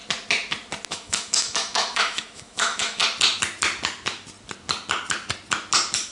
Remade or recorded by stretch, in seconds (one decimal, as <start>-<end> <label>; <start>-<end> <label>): 0.0-0.9 recorded; 0.9-3.0 remade; 3.0-6.1 recorded